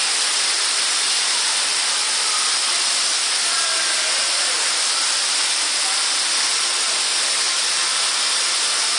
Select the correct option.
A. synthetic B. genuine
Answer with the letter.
B